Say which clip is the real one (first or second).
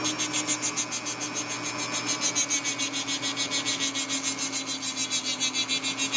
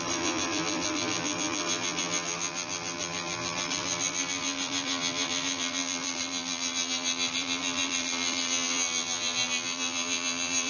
first